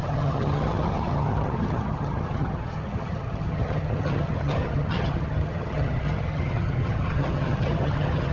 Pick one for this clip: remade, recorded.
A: remade